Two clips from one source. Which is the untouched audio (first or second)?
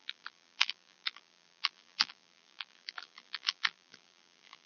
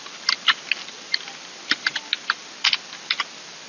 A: second